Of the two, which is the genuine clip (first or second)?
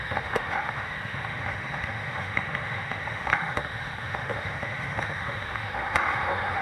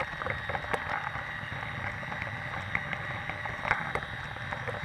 second